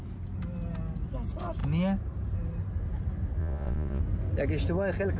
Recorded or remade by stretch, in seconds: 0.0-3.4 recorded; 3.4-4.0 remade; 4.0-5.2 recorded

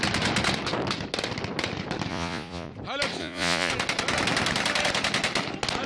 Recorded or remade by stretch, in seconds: 0.0-2.1 recorded; 2.1-2.7 remade; 2.7-3.2 recorded; 3.2-3.7 remade; 3.7-5.9 recorded

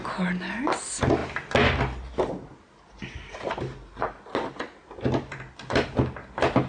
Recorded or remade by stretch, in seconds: 0.0-6.7 recorded

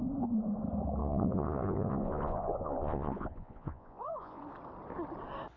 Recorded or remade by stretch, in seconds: 0.0-1.0 recorded; 1.0-4.4 remade; 4.4-5.6 recorded

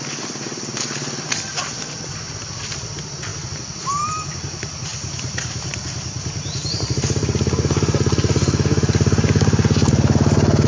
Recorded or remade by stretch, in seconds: 0.0-10.7 recorded

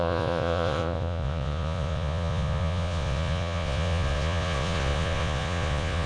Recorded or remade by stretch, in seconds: 0.0-6.1 remade

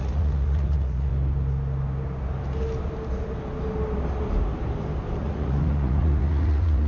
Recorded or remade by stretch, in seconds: 0.0-1.1 remade; 1.1-5.2 recorded; 5.2-6.9 remade